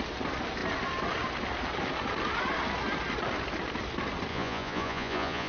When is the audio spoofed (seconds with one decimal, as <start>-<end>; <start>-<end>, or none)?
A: 4.3-5.5